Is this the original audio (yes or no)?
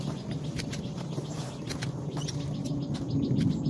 yes